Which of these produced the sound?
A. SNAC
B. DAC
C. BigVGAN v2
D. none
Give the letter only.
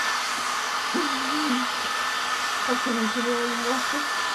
D